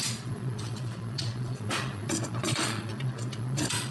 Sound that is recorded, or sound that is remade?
remade